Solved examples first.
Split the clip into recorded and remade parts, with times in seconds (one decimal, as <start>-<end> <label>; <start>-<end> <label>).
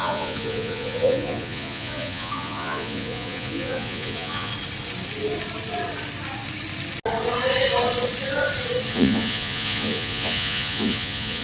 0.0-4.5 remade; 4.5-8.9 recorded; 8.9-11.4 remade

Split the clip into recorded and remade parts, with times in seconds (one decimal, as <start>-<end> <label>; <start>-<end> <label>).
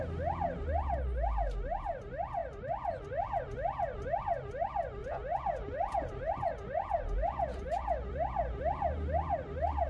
0.0-5.0 recorded; 5.0-8.6 remade; 8.6-9.9 recorded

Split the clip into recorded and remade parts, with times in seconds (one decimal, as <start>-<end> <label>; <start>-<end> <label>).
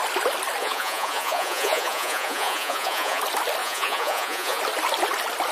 0.0-0.6 recorded; 0.6-3.2 remade; 3.2-3.6 recorded; 3.6-4.6 remade; 4.6-5.5 recorded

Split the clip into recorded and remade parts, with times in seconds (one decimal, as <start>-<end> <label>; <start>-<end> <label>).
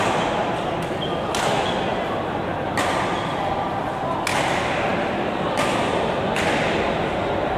0.0-7.6 recorded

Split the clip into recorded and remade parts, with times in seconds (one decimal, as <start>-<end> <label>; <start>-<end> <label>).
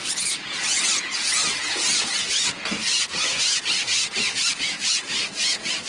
0.0-5.9 remade